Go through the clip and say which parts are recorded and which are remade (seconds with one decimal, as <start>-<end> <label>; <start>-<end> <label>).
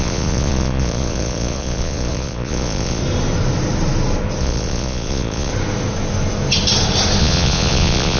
0.0-3.0 remade; 3.0-4.4 recorded; 4.4-5.5 remade; 5.5-7.2 recorded; 7.2-8.2 remade